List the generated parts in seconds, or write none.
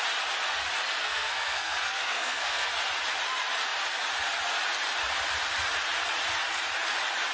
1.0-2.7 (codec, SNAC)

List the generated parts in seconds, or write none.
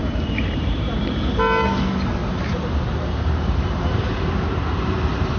0.0-1.1 (vocoder, BigVGAN v2); 2.2-4.8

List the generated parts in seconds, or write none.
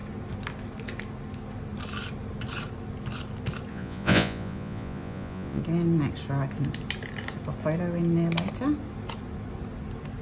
3.7-5.6 (vocoder, Vocos)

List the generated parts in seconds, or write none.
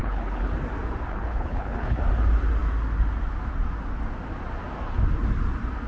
0.0-0.5 (codec, HILCodec); 1.1-2.0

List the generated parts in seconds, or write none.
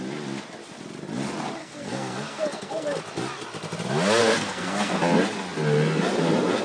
1.6-3.0 (codec, SNAC); 4.2-5.0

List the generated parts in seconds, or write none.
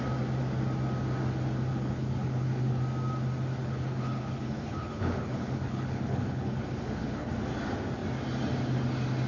1.7-2.8 (codec, HILCodec); 3.6-7.3